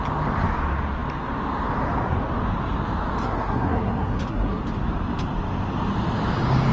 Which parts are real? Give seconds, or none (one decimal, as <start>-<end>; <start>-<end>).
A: 0.0-3.2; 4.6-6.7